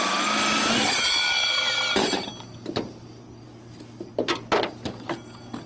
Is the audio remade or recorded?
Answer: recorded